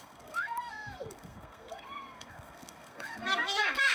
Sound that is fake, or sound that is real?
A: fake